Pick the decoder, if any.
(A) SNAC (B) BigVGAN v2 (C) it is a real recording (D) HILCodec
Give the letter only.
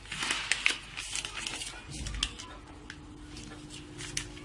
C